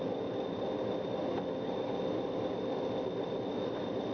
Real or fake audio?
real